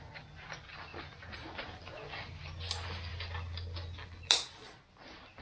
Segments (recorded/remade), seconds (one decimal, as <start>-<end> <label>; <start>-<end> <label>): 0.0-5.4 recorded